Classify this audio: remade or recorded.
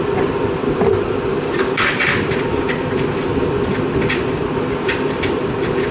recorded